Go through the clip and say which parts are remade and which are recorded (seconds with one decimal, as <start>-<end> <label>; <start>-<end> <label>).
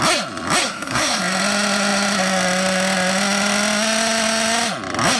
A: 0.0-0.6 recorded; 0.6-1.2 remade; 1.2-5.2 recorded